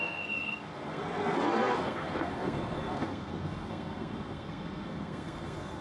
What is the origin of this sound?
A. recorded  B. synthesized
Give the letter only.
B